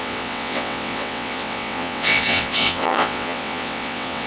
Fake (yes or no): yes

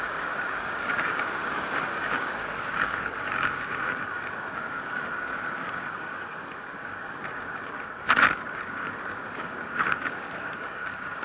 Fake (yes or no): yes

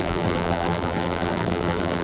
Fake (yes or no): yes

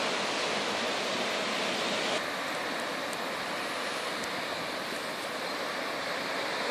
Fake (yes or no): no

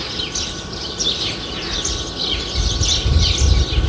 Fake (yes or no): no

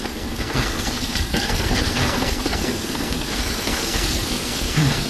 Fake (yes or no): yes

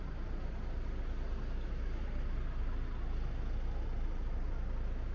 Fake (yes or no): no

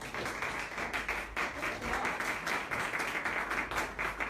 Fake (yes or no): no